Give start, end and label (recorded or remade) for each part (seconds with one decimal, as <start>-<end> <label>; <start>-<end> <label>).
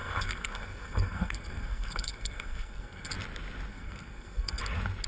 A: 0.0-3.1 remade; 3.1-3.7 recorded; 3.7-4.6 remade; 4.6-5.1 recorded